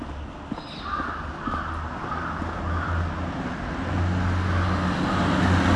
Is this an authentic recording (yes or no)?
yes